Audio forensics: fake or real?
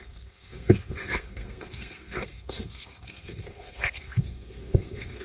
fake